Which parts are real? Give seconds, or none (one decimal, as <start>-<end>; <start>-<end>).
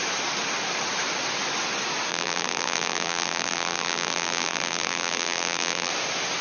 0.0-2.1; 5.9-6.4